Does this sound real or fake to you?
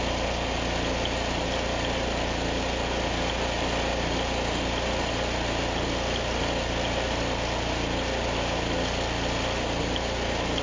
real